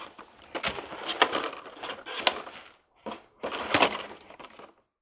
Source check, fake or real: real